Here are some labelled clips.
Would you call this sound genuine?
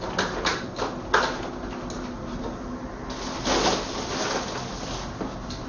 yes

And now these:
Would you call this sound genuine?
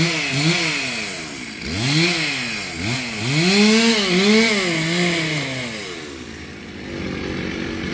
yes